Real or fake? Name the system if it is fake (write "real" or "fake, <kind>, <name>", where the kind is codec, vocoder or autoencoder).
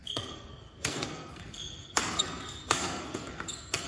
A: fake, codec, SNAC